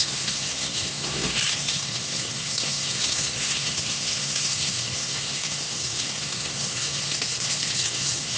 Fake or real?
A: fake